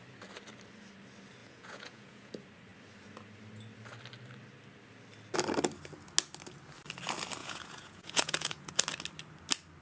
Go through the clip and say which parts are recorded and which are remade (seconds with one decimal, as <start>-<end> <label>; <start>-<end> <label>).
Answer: 0.0-1.4 recorded; 1.4-2.3 remade; 2.3-7.4 recorded; 7.4-8.7 remade; 8.7-9.8 recorded